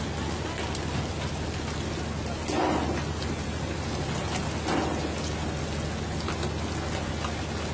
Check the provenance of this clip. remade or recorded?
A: recorded